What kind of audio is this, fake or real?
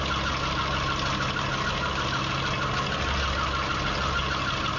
real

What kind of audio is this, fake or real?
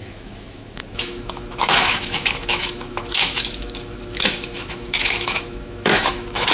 fake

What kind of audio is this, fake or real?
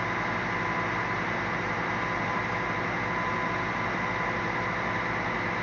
real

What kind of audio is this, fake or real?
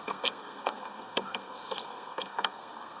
fake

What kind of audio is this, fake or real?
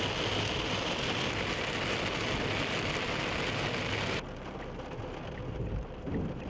real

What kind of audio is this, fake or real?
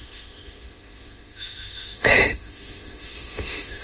fake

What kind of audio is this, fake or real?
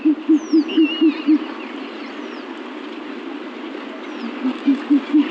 real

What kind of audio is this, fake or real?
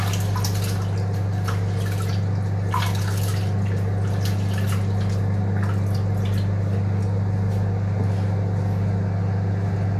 real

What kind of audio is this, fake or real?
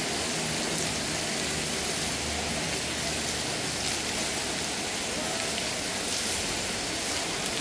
real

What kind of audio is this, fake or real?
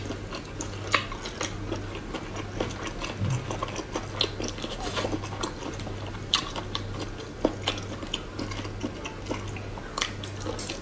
real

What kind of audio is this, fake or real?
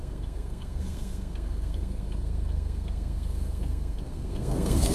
fake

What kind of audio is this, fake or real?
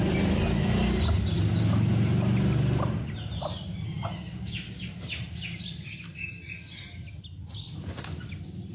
real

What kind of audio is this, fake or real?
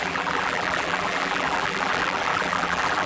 fake